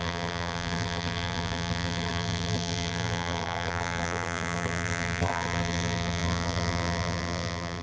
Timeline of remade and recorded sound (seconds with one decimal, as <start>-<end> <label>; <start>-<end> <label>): 0.0-7.8 remade